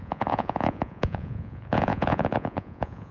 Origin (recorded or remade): remade